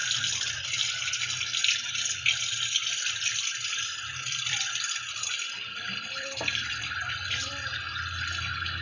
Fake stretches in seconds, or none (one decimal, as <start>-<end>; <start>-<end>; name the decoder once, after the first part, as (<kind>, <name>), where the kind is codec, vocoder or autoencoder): 1.6-6.8 (vocoder, BigVGAN v2)